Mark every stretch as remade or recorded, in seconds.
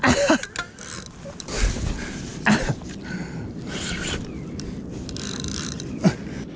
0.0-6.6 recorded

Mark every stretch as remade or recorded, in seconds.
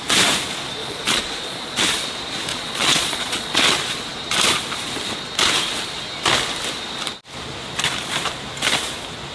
0.0-0.8 recorded; 0.8-1.8 remade; 1.8-2.5 recorded; 2.5-3.6 remade; 3.6-9.3 recorded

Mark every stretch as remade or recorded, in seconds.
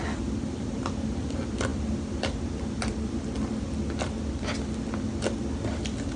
0.0-6.2 recorded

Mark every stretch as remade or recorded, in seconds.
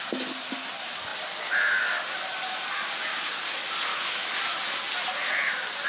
0.0-3.9 recorded; 3.9-4.4 remade; 4.4-5.9 recorded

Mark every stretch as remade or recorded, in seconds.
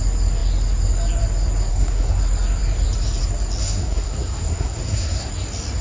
0.0-1.7 recorded; 1.7-2.2 remade; 2.2-3.6 recorded; 3.6-5.3 remade; 5.3-5.8 recorded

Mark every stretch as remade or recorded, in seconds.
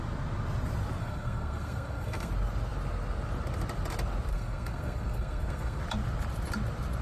0.0-1.0 recorded; 1.0-2.3 remade; 2.3-4.3 recorded; 4.3-5.8 remade; 5.8-7.0 recorded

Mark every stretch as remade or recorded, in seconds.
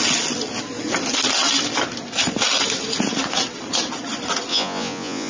0.0-4.5 recorded; 4.5-5.3 remade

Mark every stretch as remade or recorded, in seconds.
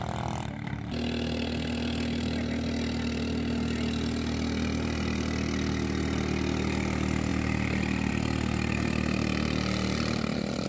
0.0-10.7 recorded